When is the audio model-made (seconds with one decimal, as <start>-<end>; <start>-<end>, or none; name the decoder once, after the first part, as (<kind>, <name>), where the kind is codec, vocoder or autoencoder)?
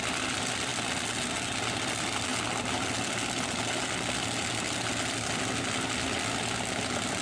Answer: none